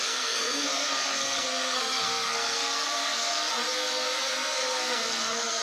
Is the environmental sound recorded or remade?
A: remade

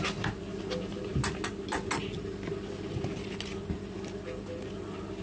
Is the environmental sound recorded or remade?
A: recorded